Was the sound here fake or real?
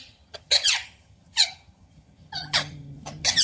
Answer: fake